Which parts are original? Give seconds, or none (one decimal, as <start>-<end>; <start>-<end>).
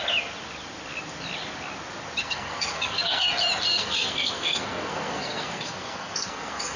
0.0-2.2; 3.3-3.7